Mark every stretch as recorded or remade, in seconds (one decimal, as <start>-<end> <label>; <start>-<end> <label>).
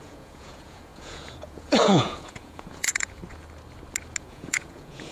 0.0-3.2 remade; 3.2-4.2 recorded; 4.2-5.1 remade